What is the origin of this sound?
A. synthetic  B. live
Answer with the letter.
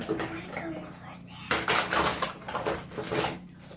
B